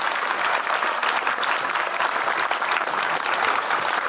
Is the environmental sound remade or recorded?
remade